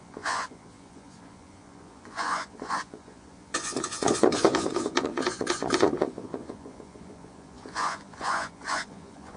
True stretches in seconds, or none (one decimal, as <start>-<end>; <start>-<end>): none